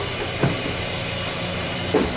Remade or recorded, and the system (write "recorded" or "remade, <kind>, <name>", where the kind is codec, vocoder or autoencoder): recorded